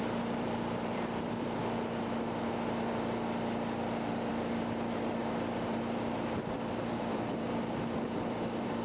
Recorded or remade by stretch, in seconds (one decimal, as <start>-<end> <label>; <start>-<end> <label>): 0.0-1.6 remade; 1.6-4.3 recorded; 4.3-8.8 remade